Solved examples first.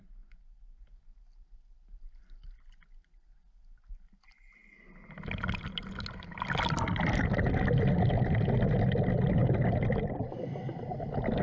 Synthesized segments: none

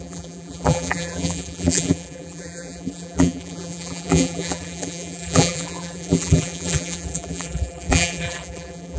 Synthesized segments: 0.0-9.0 (vocoder, BigVGAN v2)